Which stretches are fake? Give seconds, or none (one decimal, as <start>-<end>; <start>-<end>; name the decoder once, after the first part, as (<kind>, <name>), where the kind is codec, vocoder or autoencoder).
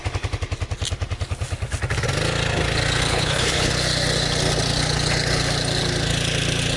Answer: 3.1-3.7 (codec, HILCodec)